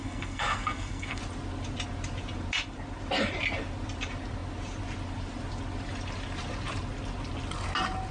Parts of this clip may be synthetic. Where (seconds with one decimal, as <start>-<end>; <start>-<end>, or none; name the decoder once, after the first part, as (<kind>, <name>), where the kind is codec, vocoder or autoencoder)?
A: 0.0-1.2 (codec, SNAC)